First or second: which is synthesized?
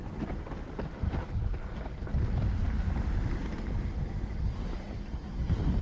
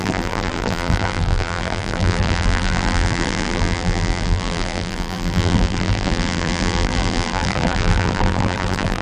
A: second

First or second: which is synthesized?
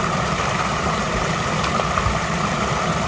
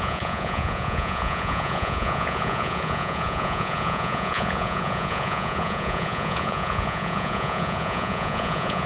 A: second